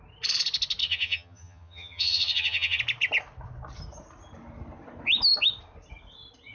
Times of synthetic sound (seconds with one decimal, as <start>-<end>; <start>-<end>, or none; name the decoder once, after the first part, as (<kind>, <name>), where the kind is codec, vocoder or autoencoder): 0.8-2.8 (vocoder, HiFi-GAN)